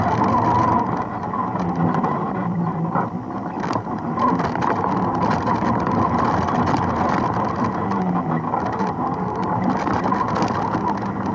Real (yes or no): yes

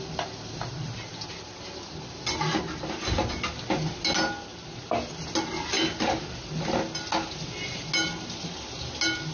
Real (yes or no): yes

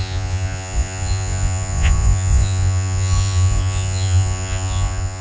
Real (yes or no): no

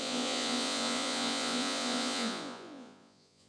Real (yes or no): no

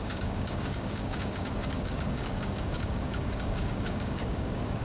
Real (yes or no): no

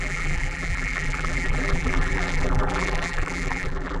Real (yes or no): no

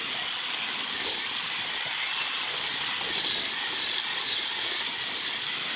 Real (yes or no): yes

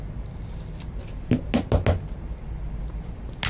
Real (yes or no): yes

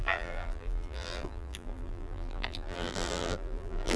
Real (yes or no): no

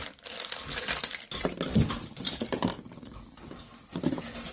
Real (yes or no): yes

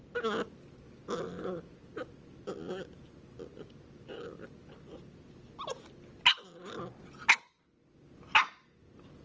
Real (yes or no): yes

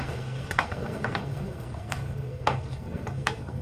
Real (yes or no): no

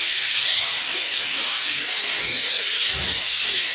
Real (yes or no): no